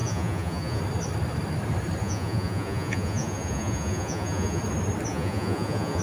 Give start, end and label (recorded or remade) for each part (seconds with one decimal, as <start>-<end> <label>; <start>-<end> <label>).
0.0-0.8 remade; 0.8-2.0 recorded; 2.0-4.6 remade; 4.6-5.1 recorded; 5.1-6.0 remade